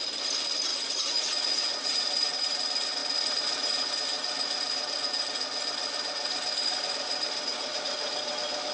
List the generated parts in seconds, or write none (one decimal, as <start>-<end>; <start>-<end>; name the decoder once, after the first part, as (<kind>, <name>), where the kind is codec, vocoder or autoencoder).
0.7-2.3 (vocoder, Vocos); 7.5-8.1